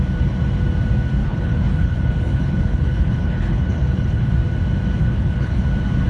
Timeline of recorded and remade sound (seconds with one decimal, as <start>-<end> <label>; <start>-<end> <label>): 0.0-1.2 recorded; 1.2-4.3 remade; 4.3-5.0 recorded; 5.0-5.6 remade; 5.6-6.1 recorded